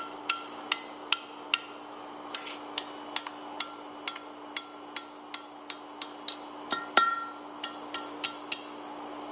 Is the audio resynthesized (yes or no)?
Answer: no